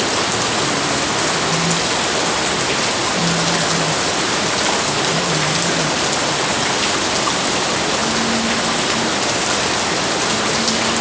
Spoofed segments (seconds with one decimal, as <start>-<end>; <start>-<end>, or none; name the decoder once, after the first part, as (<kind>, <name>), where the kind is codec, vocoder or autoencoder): none